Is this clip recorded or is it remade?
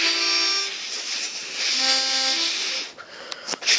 recorded